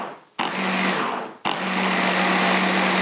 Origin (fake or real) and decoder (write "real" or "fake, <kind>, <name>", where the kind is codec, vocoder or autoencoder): real